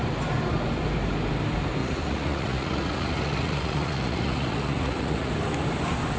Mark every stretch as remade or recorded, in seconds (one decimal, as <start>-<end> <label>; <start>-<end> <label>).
0.0-1.8 recorded; 1.8-5.3 remade; 5.3-6.2 recorded